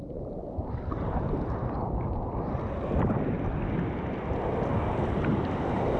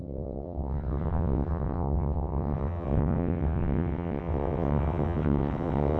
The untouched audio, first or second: first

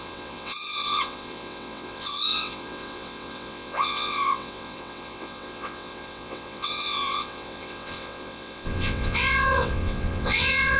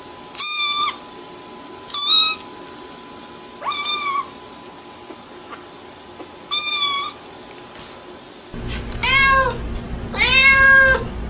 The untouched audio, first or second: second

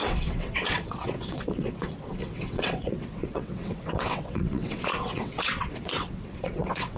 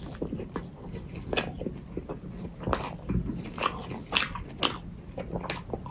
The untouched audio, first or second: second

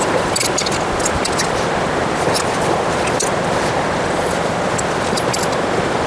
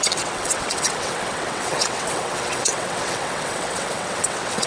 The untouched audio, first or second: first